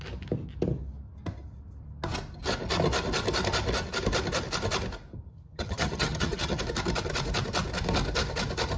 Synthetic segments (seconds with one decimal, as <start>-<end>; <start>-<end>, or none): 5.3-6.6

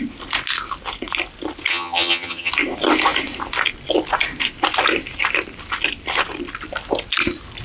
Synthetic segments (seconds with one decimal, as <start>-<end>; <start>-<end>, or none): 1.7-2.5

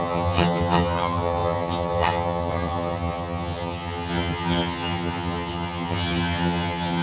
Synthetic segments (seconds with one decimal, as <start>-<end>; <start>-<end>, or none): 0.0-7.0

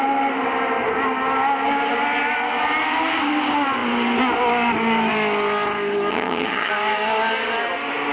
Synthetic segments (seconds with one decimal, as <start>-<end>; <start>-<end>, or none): 6.1-6.7

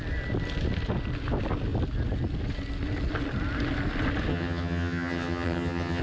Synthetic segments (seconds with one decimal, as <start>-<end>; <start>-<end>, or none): 4.3-6.0

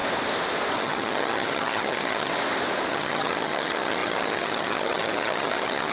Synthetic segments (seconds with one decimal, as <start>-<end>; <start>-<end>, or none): 0.8-2.3; 2.9-5.9